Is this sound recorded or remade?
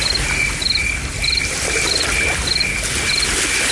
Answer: recorded